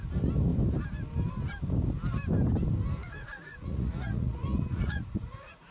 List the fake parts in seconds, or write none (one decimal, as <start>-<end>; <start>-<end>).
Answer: 3.0-5.7